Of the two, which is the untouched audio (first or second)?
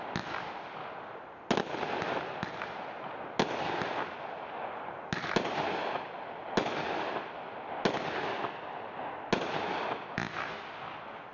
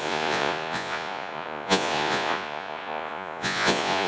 first